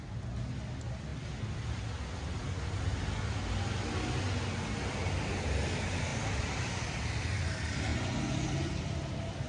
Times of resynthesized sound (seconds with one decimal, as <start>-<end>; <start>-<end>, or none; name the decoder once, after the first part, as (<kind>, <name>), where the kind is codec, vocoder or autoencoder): 7.9-8.5 (vocoder, Vocos)